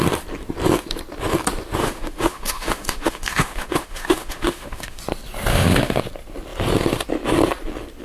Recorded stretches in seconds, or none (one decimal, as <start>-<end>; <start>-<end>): 0.0-1.8; 5.0-5.5; 6.0-8.0